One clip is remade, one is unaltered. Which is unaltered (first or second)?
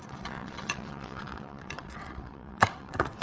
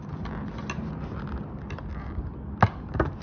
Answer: second